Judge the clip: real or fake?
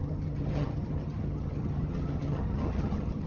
fake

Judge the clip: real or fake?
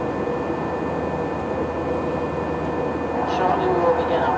real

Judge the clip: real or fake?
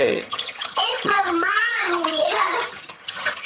fake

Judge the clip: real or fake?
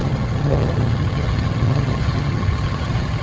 fake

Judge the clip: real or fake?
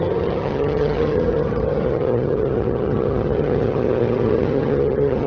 fake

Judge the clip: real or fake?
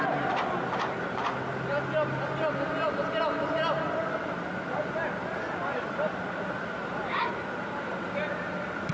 real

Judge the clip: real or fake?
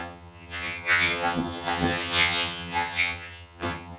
fake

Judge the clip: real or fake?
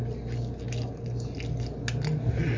real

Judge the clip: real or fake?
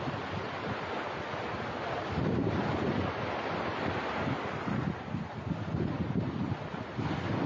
real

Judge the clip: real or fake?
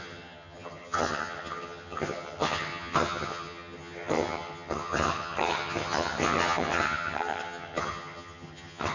fake